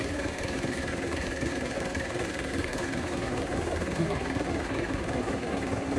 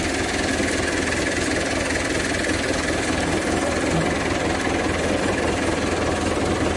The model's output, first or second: first